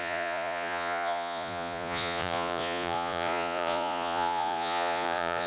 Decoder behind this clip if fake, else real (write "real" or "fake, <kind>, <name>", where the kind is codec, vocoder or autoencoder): fake, vocoder, Vocos